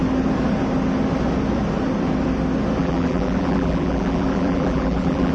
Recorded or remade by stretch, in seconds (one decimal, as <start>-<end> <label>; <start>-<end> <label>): 0.0-2.8 recorded; 2.8-5.3 remade